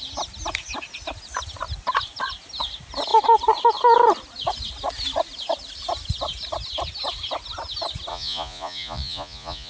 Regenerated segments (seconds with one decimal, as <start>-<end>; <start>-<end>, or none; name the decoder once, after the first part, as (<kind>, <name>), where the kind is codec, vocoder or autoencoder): 8.1-9.7 (vocoder, Vocos)